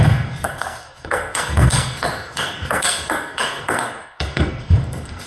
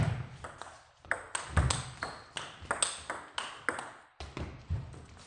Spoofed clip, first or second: first